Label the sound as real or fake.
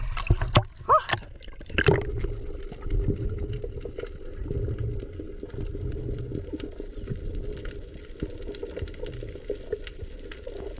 real